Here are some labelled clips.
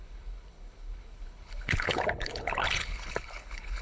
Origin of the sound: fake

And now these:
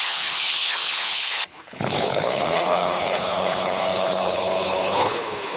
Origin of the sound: fake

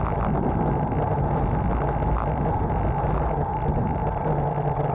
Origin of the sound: real